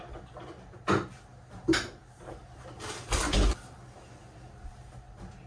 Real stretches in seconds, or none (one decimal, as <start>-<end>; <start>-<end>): 0.0-5.5